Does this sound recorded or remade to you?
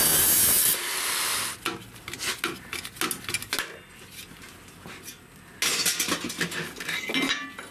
recorded